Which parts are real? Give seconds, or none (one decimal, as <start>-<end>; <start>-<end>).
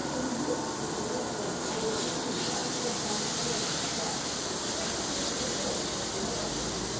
0.0-7.0